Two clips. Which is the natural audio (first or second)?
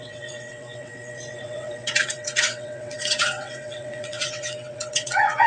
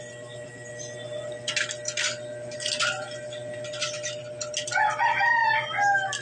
second